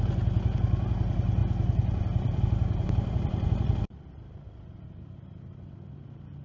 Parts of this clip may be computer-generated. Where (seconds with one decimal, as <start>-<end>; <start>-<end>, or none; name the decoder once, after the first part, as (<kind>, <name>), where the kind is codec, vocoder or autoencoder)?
1.4-5.2 (vocoder, BigVGAN v2)